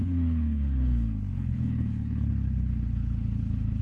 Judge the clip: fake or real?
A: fake